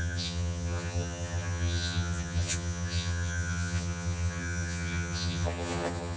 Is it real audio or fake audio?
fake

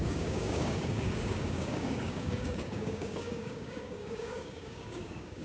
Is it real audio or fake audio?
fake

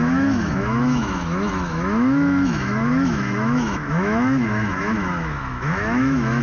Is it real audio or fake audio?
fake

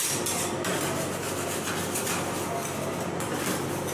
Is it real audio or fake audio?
real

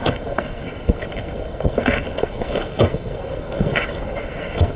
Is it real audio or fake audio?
fake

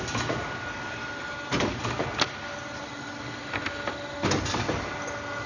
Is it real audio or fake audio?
real